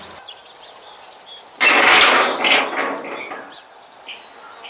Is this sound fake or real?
real